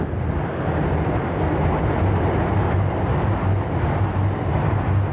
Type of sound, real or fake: real